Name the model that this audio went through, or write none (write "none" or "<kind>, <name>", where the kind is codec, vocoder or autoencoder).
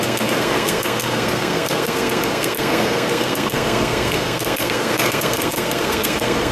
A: codec, SNAC